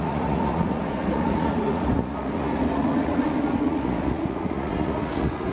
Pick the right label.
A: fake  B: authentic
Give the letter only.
A